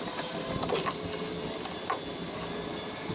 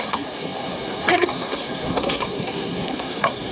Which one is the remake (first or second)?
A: second